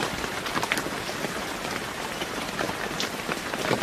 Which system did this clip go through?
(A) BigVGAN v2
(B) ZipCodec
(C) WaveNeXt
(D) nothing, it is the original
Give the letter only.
A